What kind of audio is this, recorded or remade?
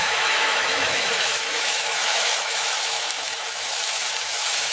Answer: remade